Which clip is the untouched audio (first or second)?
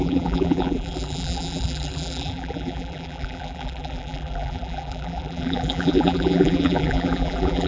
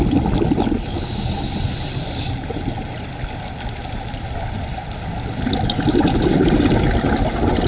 second